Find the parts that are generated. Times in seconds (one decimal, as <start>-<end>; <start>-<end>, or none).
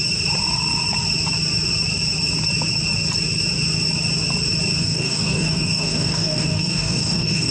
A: 4.8-7.5